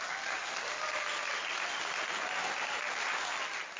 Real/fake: real